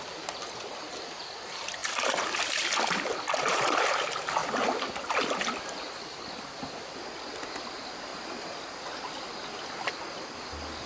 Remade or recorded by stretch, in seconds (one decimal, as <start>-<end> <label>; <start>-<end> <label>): 0.0-10.9 recorded